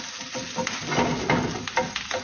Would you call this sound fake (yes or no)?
no